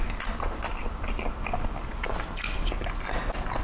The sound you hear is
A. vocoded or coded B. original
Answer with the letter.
B